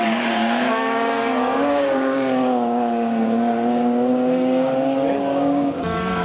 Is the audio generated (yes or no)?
yes